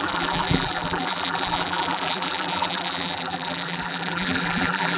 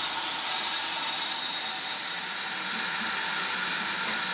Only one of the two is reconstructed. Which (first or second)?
first